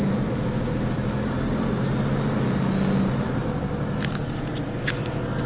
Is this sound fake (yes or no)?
no